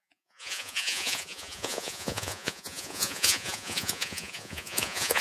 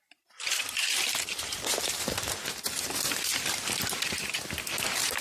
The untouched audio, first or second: second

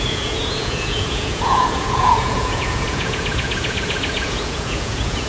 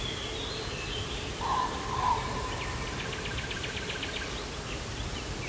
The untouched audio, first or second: second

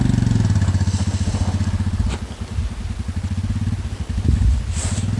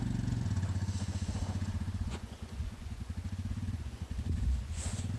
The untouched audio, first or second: first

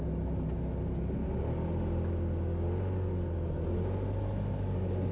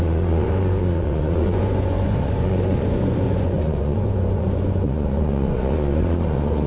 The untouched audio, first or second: first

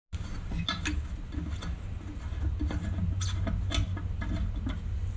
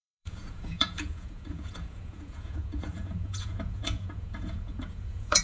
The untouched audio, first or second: first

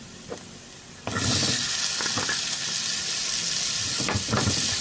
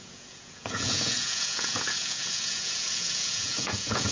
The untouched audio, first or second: first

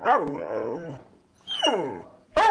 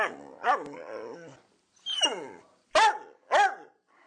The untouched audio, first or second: second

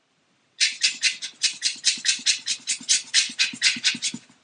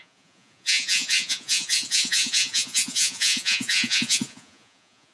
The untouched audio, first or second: first